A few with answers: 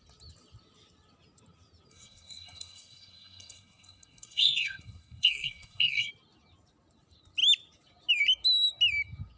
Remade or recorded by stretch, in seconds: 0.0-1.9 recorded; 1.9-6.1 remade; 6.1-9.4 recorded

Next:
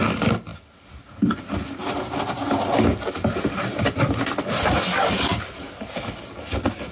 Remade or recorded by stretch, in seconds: 0.0-6.9 recorded

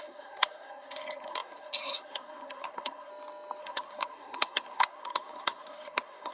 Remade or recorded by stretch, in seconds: 0.0-3.1 remade; 3.1-3.6 recorded; 3.6-6.3 remade

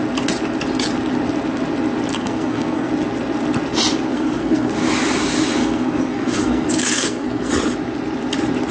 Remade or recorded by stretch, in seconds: 0.0-2.1 recorded; 2.1-2.9 remade; 2.9-4.1 recorded; 4.1-4.7 remade; 4.7-5.6 recorded; 5.6-7.5 remade; 7.5-8.7 recorded

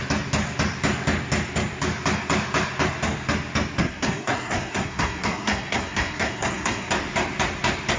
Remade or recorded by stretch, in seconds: 0.0-3.8 recorded; 3.8-6.9 remade; 6.9-8.0 recorded

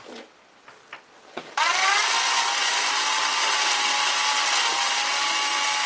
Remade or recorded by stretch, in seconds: 0.0-5.9 recorded

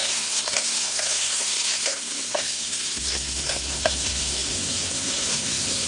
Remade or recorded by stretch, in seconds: 0.0-5.9 remade